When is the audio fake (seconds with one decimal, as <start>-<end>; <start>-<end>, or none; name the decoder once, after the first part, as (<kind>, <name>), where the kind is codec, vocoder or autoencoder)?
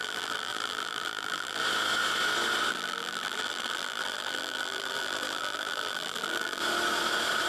0.0-1.6 (vocoder, BigVGAN v2); 2.7-6.6